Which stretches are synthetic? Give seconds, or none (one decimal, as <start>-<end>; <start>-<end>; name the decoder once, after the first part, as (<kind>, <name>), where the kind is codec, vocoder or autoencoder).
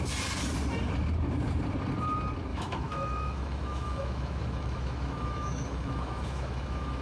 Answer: 2.5-7.0 (autoencoder, DAC-VAE)